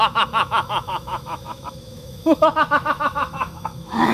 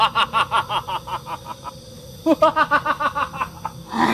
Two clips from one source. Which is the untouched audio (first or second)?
second